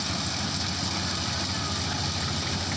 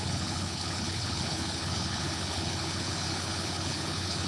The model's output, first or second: second